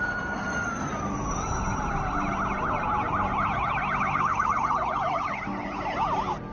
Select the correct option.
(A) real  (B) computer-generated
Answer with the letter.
A